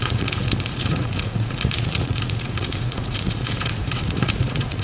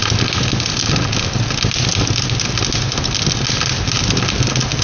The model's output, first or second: first